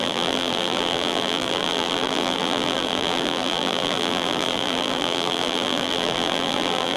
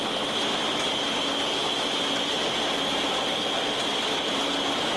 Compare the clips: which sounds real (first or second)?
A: second